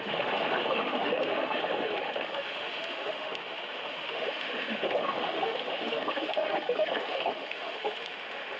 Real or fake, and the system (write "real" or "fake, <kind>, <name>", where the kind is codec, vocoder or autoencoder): fake, autoencoder, DAC-VAE